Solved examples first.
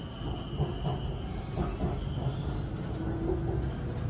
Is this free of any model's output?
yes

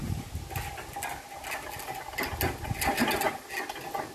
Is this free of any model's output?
yes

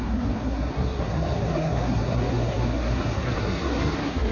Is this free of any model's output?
no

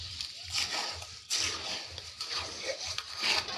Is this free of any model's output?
yes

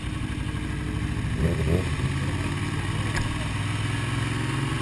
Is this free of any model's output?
yes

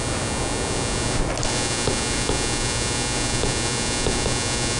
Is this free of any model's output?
yes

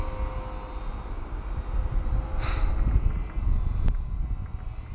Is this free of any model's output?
yes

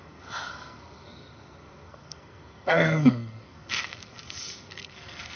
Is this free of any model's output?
no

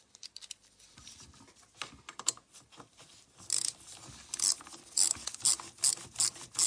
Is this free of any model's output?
yes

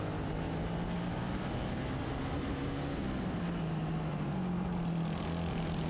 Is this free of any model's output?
yes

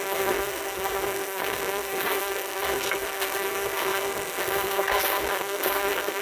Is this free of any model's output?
no